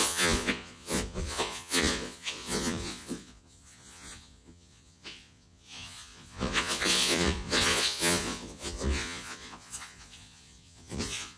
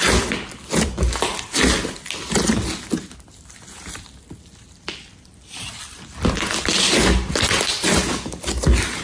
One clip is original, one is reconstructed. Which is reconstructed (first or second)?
first